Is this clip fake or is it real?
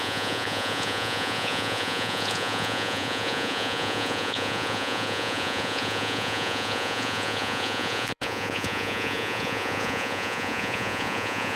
fake